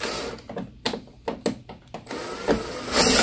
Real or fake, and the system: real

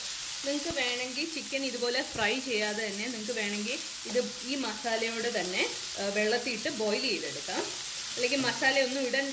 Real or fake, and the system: real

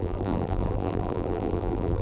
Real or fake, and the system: fake, vocoder, BigVGAN v2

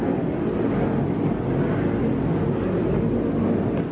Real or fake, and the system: real